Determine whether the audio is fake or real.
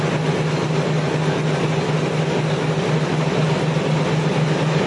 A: real